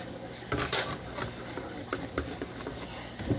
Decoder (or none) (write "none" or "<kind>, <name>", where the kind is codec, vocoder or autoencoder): none